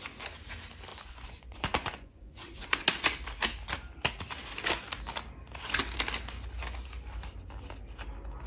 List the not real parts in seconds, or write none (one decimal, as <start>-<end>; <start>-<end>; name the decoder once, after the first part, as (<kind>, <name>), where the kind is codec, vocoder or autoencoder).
0.9-2.8 (vocoder, Vocos)